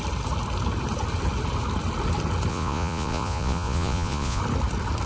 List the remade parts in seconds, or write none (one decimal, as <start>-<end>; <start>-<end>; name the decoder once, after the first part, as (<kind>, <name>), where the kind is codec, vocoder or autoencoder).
2.5-4.4 (vocoder, Vocos)